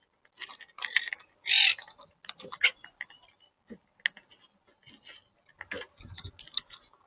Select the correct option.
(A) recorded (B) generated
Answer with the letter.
A